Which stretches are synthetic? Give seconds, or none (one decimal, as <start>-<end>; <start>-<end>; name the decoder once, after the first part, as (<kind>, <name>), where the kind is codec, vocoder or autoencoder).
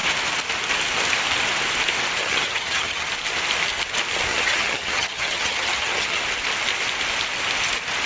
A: 2.2-3.1 (vocoder, HiFi-GAN); 4.3-6.2